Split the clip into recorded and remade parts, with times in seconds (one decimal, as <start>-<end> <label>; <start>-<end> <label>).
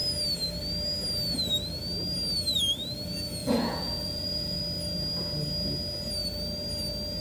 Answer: 0.0-3.4 recorded; 3.4-4.6 remade; 4.6-7.2 recorded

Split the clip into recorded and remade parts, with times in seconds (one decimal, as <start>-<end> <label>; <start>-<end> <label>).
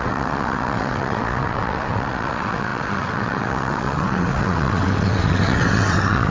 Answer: 0.0-6.3 remade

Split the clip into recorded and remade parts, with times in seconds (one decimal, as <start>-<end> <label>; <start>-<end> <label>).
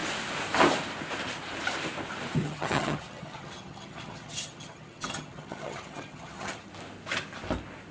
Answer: 0.0-2.4 recorded; 2.4-6.7 remade; 6.7-7.9 recorded